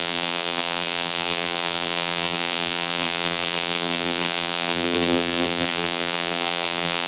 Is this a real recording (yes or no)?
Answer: no